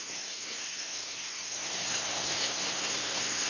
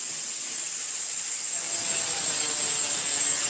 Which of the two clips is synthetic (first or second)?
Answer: first